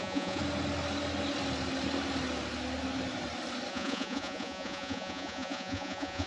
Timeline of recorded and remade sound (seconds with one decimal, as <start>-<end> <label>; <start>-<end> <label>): 0.0-0.4 remade; 0.4-3.7 recorded; 3.7-6.3 remade